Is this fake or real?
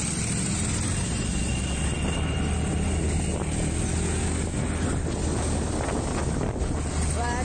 real